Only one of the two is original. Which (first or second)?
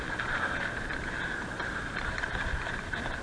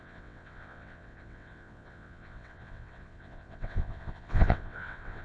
first